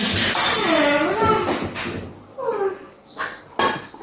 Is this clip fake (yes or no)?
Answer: no